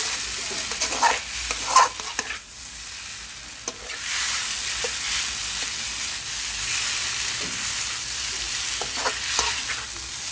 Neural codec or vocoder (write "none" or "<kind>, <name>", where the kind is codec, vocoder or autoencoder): none